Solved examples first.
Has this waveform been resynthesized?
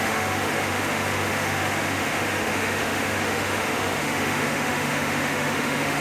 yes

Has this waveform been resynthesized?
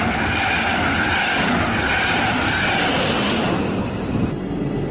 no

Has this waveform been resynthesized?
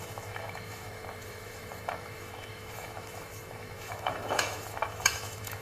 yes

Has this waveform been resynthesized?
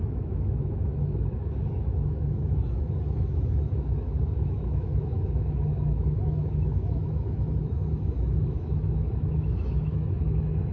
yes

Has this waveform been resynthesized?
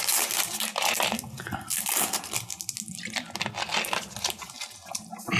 no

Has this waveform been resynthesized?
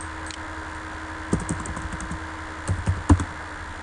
no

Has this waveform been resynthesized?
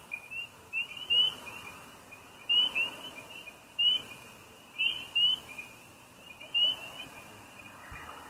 no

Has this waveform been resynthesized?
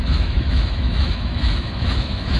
yes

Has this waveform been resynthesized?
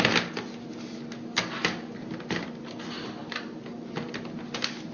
no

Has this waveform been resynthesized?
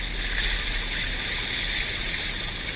no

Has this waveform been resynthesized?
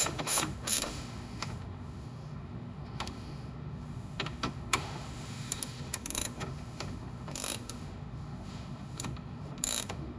yes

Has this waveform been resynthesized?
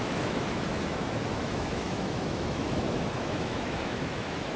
yes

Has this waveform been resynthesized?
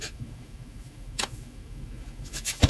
yes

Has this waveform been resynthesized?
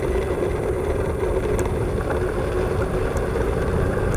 no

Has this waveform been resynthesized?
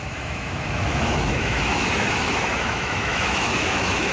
yes